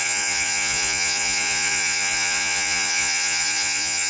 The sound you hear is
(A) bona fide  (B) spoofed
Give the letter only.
B